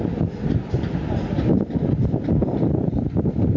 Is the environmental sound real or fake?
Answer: real